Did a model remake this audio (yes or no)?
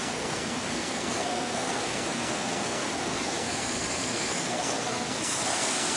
yes